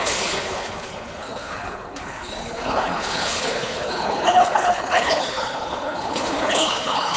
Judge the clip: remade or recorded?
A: remade